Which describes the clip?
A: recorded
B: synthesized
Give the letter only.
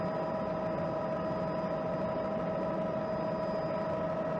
A